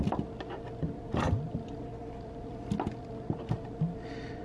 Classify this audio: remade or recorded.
recorded